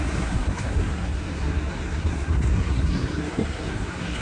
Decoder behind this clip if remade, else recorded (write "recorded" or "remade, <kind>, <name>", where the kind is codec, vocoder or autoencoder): remade, codec, SNAC